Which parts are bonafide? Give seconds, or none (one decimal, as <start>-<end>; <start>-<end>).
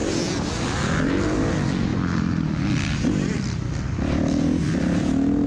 1.1-1.9; 5.1-5.5